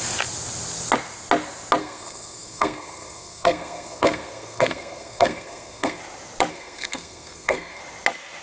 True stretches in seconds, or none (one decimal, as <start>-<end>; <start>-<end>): 0.0-1.8; 6.0-6.5; 7.8-8.4